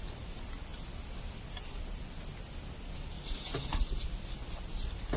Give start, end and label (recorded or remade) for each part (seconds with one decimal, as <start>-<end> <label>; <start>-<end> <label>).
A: 0.0-5.2 recorded